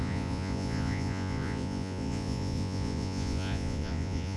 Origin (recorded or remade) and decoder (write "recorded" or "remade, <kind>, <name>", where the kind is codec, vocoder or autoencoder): remade, vocoder, Vocos